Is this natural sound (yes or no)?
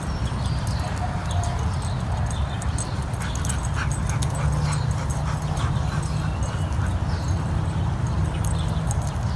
yes